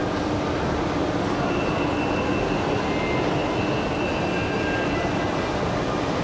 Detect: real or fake real